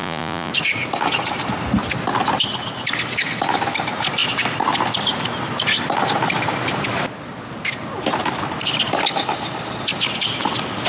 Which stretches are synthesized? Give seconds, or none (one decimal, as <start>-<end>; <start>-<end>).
0.0-0.5

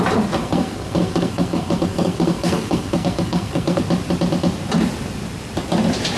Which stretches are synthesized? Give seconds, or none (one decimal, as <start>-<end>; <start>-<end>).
0.4-3.8

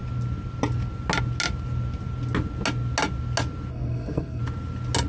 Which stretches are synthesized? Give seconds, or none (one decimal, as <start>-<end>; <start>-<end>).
3.7-4.4

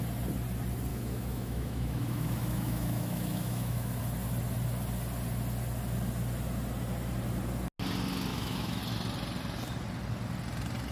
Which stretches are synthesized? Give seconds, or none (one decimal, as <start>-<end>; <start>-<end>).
0.9-4.0; 8.3-8.8

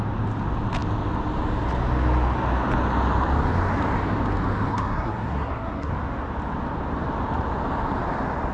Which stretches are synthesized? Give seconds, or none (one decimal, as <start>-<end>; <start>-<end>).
4.7-5.9